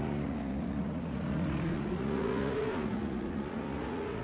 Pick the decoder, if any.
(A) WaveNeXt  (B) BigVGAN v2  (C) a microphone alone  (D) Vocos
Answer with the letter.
D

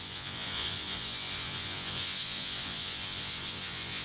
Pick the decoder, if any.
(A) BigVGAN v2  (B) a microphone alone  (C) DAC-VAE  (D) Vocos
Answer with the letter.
D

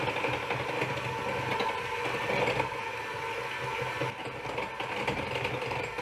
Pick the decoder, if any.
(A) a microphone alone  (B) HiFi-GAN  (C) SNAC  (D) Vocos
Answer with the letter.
A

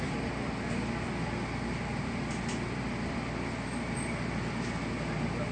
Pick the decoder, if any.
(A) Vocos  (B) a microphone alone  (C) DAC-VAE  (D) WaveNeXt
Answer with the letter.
B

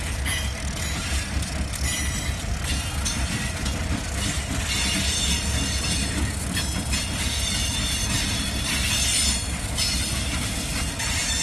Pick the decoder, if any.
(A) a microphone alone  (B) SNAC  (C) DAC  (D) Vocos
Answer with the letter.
A